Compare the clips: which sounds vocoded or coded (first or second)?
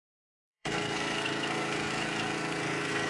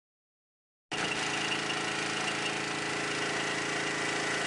first